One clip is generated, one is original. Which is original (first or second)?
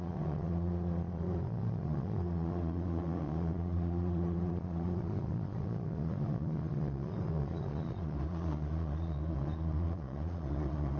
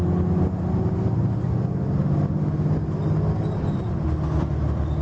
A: second